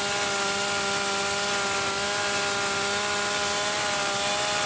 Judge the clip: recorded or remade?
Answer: recorded